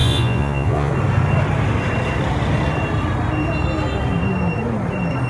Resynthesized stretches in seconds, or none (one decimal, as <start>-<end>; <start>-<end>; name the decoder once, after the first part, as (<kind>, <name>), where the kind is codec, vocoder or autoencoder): 0.0-0.9 (vocoder, Vocos)